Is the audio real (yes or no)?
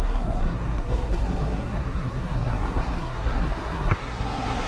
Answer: no